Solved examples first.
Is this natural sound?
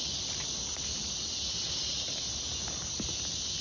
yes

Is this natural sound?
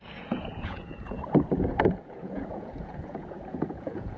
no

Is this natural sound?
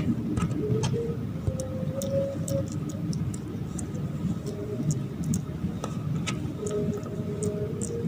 yes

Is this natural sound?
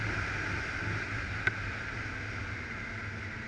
yes